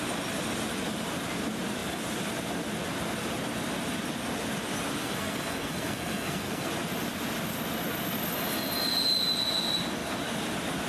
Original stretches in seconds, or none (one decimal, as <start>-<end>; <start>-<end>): 0.0-5.0; 6.7-10.9